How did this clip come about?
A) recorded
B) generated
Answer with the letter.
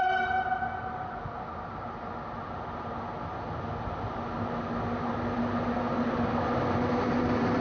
A